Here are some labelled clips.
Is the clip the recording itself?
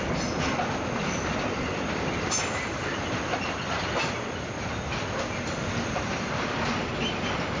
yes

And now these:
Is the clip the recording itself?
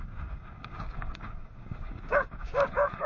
no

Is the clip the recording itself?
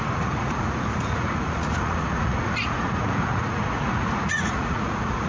no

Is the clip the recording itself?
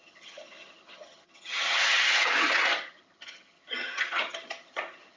no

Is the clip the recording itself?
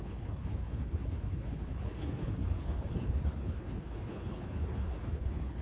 no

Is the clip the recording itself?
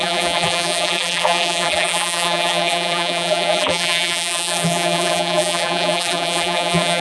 no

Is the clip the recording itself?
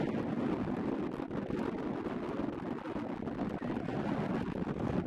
yes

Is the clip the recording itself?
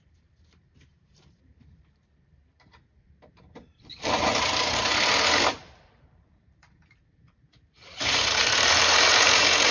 no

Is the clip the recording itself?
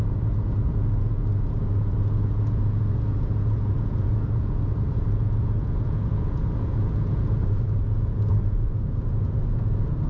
no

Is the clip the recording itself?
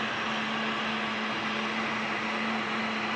yes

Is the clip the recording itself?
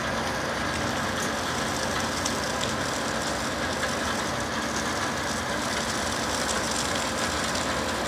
yes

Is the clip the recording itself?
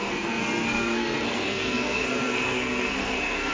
no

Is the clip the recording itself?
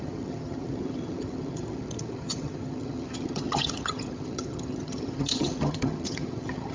no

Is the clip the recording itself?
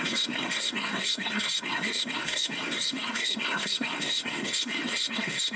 no